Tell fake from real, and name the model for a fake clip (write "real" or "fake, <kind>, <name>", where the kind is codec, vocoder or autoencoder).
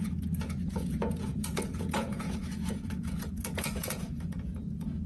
fake, vocoder, Vocos